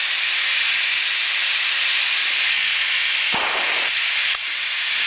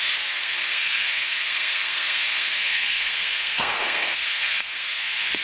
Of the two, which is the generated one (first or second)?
second